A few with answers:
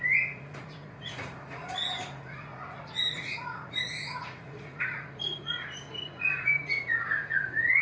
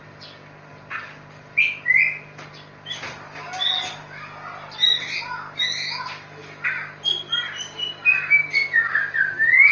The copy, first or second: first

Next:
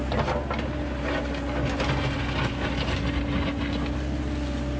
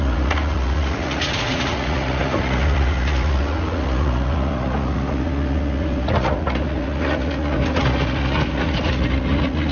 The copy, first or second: second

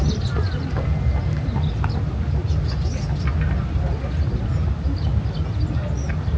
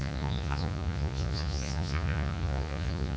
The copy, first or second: second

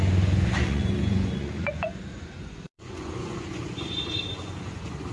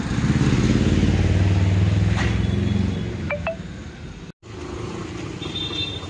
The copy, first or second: first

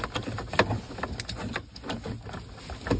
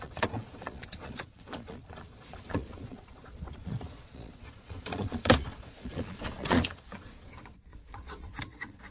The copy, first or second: second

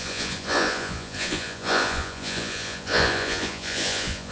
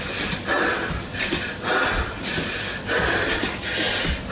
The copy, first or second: first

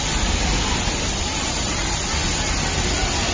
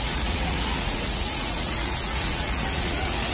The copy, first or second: second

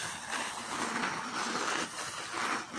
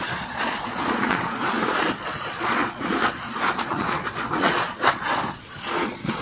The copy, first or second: second